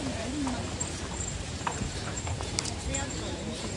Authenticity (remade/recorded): remade